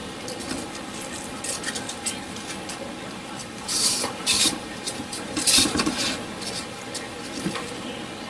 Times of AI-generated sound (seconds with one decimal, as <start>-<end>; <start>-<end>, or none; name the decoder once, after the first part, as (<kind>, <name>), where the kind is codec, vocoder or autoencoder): 3.4-6.3 (vocoder, BigVGAN v2)